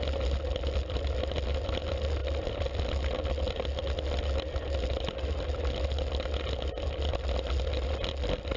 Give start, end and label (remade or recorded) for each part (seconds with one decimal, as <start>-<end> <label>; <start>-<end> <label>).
0.0-8.6 recorded